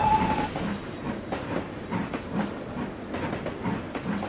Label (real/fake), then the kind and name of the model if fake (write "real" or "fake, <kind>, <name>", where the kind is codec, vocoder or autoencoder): real